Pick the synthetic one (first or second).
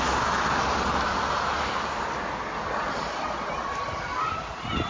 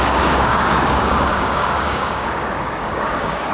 second